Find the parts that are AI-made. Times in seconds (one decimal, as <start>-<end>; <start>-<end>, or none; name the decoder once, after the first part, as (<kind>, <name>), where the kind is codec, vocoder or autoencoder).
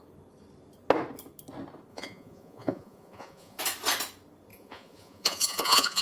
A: 1.9-3.6 (vocoder, Vocos); 4.5-6.0